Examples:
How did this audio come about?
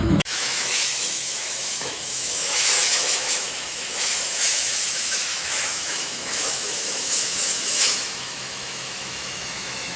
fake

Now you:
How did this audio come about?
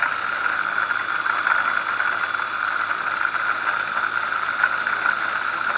real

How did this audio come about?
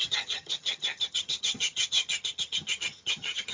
fake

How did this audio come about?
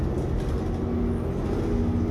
real